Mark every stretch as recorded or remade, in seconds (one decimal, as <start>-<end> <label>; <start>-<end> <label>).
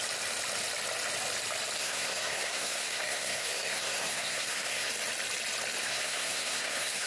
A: 0.0-1.8 recorded; 1.8-4.9 remade; 4.9-5.8 recorded; 5.8-7.1 remade